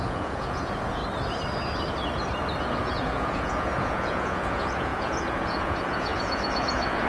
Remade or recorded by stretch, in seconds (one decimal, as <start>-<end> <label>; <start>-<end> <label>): 0.0-1.0 remade; 1.0-2.6 recorded; 2.6-7.1 remade

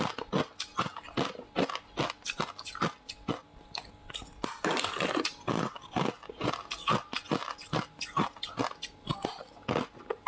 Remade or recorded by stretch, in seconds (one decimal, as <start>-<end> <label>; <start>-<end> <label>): 0.0-10.3 recorded

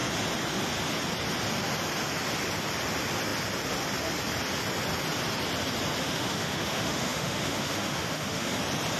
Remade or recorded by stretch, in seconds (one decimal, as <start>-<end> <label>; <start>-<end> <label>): 0.0-6.0 recorded; 6.0-8.6 remade; 8.6-9.0 recorded

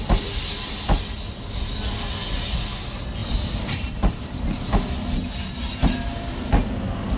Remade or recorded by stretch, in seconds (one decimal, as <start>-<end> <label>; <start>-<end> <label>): 0.0-3.2 recorded; 3.2-4.7 remade; 4.7-7.2 recorded

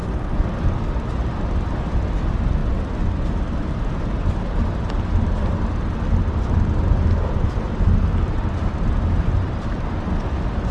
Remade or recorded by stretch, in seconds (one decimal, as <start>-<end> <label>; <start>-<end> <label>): 0.0-10.7 recorded

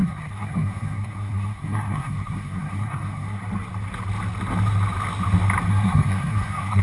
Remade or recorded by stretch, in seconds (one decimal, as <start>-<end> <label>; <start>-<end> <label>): 0.0-3.4 remade; 3.4-5.7 recorded; 5.7-6.8 remade